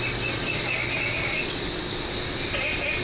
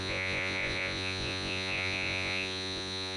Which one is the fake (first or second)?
second